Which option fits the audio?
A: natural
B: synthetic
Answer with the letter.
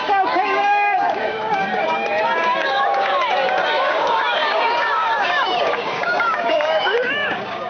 B